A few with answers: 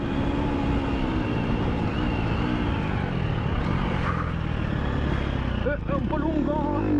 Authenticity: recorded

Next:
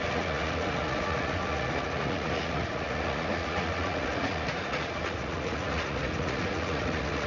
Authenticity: remade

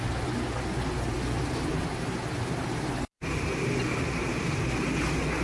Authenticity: recorded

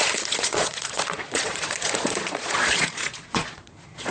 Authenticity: remade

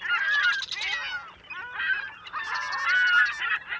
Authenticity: recorded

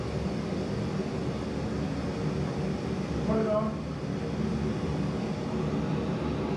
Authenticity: recorded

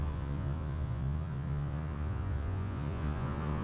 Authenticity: remade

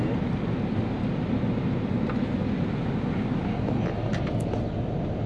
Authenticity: recorded